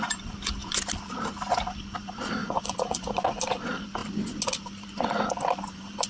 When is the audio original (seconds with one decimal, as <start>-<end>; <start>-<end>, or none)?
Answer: 0.0-2.4; 3.4-6.1